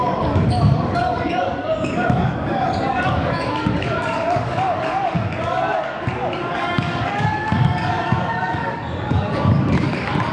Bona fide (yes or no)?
no